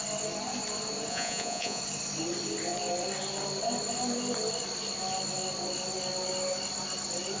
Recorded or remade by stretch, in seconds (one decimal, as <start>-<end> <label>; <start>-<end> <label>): 0.0-1.1 recorded; 1.1-1.8 remade; 1.8-7.4 recorded